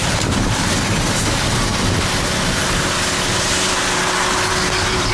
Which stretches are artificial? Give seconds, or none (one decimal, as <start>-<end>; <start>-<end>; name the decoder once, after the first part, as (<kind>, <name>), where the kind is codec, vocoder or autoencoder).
none